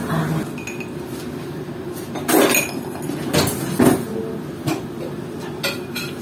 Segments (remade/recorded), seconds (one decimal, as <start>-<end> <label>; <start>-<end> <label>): 0.0-6.2 recorded